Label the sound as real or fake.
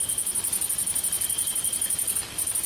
real